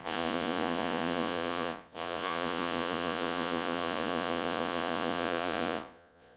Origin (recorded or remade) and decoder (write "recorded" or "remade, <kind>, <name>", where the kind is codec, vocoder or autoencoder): remade, vocoder, Vocos